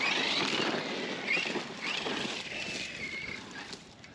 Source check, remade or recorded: recorded